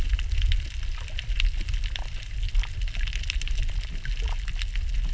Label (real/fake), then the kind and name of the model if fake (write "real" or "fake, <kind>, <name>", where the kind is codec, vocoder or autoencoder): real